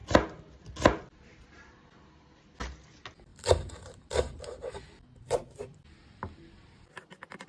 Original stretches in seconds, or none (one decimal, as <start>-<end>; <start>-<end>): 0.0-3.3; 4.8-7.5